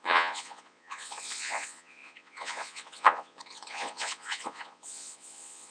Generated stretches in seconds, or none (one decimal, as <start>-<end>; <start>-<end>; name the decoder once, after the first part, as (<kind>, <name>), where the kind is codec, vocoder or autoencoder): 0.0-5.7 (vocoder, Vocos)